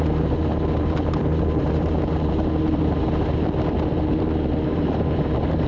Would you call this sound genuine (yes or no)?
no